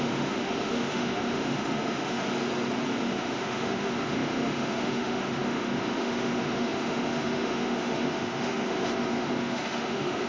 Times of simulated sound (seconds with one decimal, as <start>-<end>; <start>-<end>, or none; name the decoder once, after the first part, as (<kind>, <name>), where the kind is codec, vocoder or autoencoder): 0.0-2.2 (autoencoder, DAC-VAE); 3.0-10.3